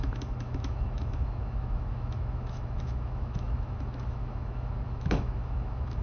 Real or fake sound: fake